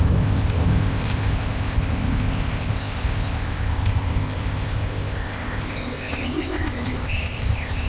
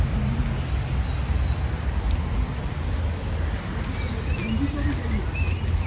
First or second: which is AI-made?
first